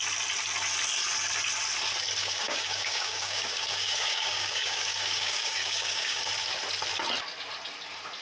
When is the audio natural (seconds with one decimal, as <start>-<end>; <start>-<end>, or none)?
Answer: 0.0-2.2; 6.3-8.2

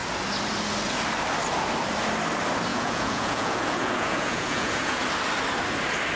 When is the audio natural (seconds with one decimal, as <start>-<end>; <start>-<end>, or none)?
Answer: 0.0-2.7; 5.0-6.2

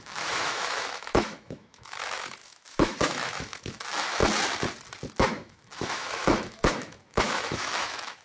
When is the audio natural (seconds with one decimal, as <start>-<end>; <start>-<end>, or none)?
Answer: 4.2-5.2

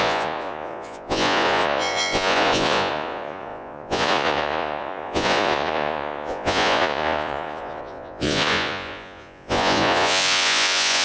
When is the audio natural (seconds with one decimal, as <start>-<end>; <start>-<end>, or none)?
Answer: none

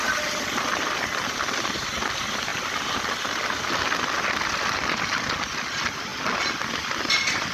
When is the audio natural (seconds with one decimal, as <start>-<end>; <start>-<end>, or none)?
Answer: 0.0-7.5

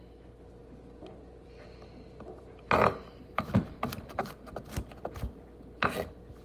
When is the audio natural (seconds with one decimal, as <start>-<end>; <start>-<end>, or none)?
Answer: 0.0-0.6; 4.3-6.4